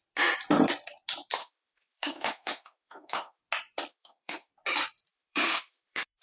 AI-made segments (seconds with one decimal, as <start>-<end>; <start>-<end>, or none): 1.4-3.4; 3.9-4.5; 5.1-6.2